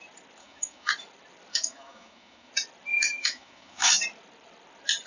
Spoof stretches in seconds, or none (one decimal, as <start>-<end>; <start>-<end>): 0.4-0.9; 1.5-2.5; 3.0-4.0